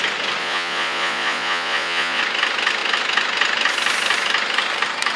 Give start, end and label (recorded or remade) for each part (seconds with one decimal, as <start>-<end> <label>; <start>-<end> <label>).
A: 0.0-0.4 recorded; 0.4-2.2 remade; 2.2-5.2 recorded